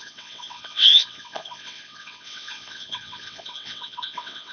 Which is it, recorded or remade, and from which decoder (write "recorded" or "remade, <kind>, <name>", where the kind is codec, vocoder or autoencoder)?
remade, vocoder, WaveNeXt